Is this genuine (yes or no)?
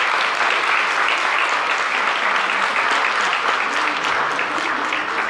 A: yes